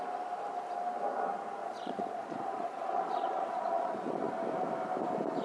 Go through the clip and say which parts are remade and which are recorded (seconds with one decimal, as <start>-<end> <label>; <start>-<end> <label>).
0.0-1.6 recorded; 1.6-4.3 remade; 4.3-5.4 recorded